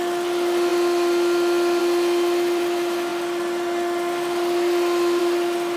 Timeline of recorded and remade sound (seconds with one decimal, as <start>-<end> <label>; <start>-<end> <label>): 0.0-5.8 recorded